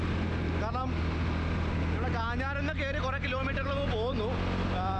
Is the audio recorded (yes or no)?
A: yes